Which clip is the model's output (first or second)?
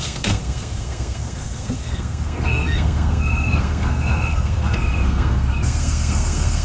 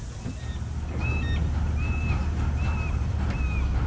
first